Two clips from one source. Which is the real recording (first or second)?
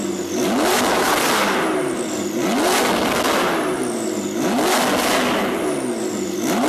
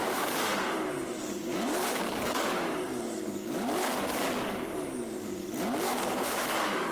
first